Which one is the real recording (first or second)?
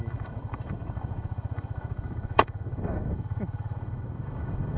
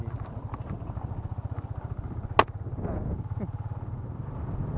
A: second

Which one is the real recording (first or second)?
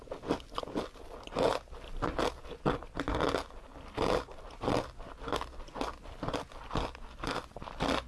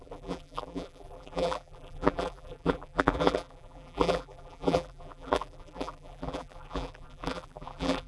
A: first